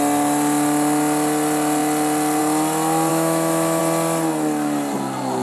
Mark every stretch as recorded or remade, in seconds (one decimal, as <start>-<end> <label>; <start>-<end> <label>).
0.0-3.1 recorded; 3.1-3.8 remade; 3.8-5.4 recorded